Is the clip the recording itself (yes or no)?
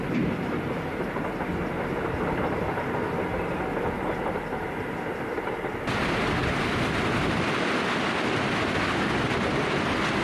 yes